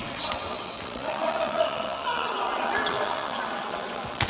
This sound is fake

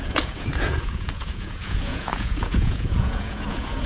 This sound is fake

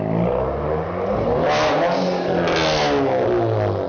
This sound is real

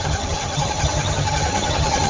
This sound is fake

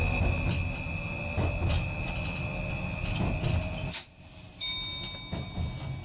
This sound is real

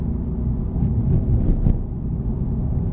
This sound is real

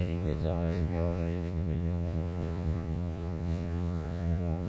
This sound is fake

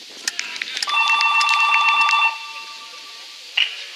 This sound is real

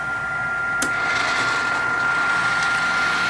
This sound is real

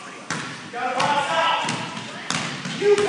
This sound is real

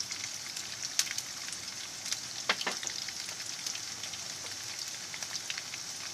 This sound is real